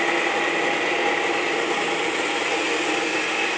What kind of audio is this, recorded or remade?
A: recorded